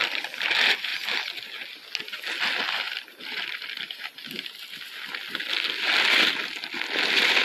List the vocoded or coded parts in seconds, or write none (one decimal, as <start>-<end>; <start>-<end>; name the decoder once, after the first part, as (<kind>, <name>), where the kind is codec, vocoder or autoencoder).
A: none